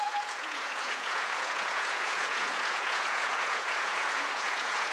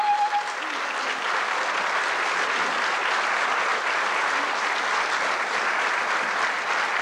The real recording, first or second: second